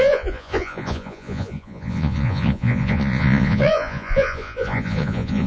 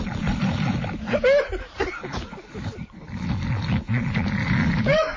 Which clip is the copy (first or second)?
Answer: first